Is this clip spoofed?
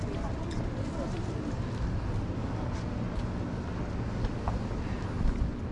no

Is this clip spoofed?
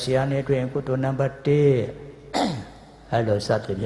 no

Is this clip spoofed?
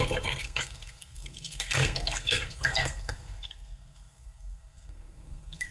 yes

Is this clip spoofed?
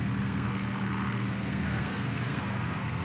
yes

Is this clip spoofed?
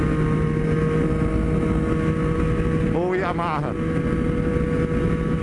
no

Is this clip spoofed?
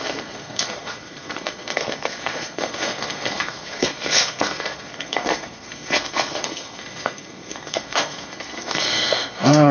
yes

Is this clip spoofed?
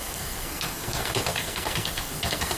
yes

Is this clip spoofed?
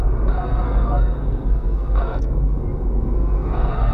yes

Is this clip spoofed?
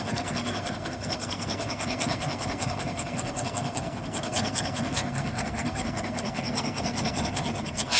yes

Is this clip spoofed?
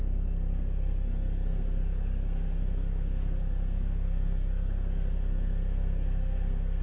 yes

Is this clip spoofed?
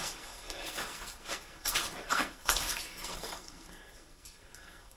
yes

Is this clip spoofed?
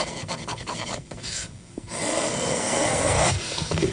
yes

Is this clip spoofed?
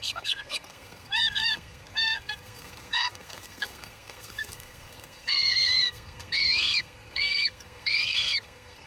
yes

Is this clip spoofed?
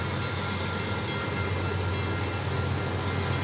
no